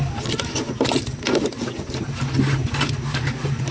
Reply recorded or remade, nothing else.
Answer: recorded